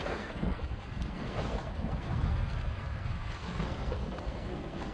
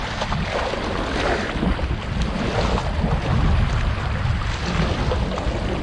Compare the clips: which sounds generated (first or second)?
first